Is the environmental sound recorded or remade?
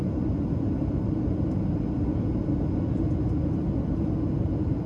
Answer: recorded